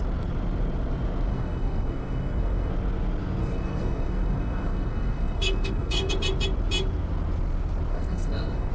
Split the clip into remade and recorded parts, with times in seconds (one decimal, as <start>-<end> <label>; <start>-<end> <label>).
0.0-1.3 recorded; 1.3-2.7 remade; 2.7-3.4 recorded; 3.4-6.1 remade; 6.1-7.9 recorded; 7.9-8.7 remade